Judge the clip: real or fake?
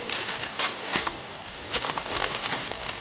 fake